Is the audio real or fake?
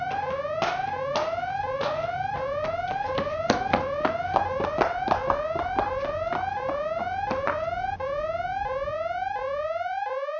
real